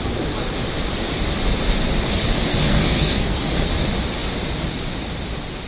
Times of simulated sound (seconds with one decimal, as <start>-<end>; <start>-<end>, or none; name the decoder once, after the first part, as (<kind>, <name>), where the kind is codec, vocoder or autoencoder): 2.5-3.7 (codec, SNAC)